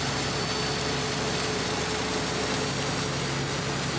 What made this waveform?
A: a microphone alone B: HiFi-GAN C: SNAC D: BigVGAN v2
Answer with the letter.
A